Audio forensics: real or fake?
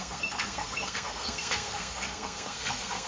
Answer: fake